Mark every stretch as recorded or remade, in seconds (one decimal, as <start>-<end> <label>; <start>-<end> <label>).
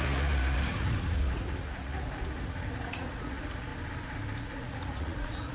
0.0-3.7 remade; 3.7-4.4 recorded; 4.4-5.5 remade